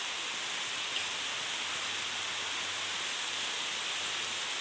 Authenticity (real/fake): real